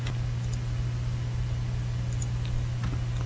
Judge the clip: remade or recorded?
recorded